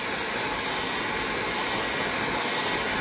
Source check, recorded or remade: recorded